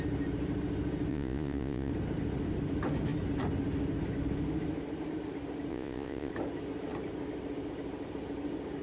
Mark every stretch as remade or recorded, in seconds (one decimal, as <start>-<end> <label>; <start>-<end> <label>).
0.0-1.1 recorded; 1.1-1.9 remade; 1.9-5.7 recorded; 5.7-6.3 remade; 6.3-8.8 recorded